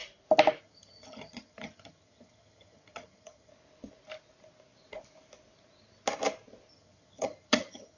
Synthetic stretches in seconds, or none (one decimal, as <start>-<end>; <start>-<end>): 0.6-3.5; 6.7-8.0